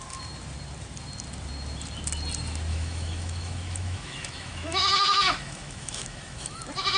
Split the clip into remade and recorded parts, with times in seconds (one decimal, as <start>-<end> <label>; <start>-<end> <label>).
0.0-2.7 recorded; 2.7-6.6 remade; 6.6-7.0 recorded